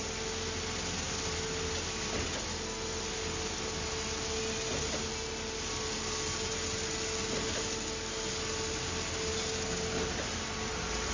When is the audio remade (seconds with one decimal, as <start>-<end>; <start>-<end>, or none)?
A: none